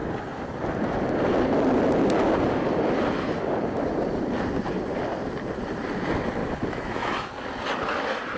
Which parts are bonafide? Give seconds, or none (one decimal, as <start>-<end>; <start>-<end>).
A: 0.0-6.4; 7.3-8.4